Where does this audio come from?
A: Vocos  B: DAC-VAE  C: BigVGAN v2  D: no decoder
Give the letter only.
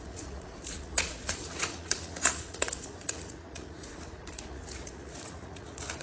A